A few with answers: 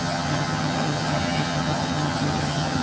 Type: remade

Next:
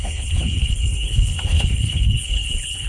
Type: remade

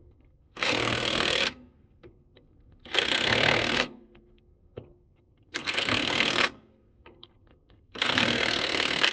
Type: remade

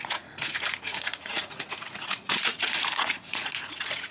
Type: remade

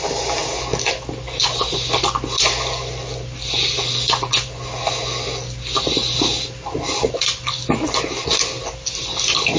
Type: recorded